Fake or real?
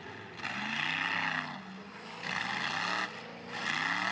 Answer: real